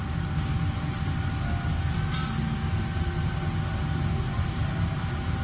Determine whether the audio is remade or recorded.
recorded